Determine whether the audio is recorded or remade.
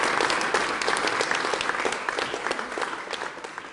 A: recorded